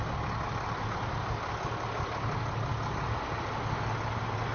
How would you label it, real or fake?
real